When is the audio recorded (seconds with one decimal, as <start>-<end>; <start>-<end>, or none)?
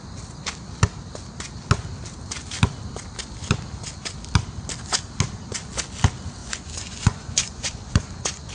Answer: 0.0-6.4